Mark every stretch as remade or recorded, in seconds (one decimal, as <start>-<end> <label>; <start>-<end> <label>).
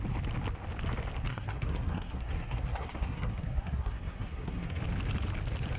0.0-1.3 recorded; 1.3-4.8 remade; 4.8-5.8 recorded